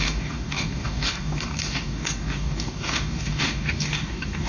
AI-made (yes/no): yes